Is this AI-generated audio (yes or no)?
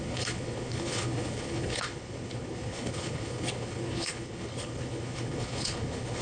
yes